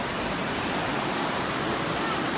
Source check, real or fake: real